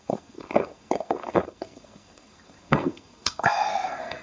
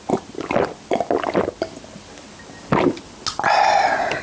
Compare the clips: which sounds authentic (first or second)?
second